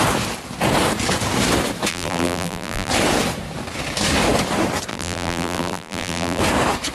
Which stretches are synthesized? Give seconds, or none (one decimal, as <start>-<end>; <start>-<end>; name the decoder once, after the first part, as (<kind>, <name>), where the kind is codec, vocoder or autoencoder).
1.9-2.9 (vocoder, BigVGAN v2); 4.9-6.4